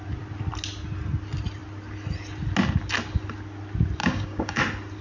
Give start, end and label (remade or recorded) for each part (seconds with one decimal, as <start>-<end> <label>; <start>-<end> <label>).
0.0-4.0 recorded; 4.0-4.6 remade; 4.6-5.0 recorded